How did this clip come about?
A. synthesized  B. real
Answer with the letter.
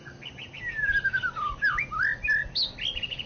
B